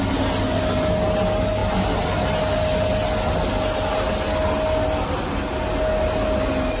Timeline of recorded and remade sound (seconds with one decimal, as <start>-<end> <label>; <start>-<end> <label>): 0.0-6.8 recorded